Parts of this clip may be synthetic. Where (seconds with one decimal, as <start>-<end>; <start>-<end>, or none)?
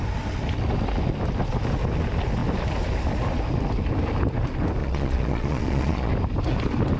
4.8-6.1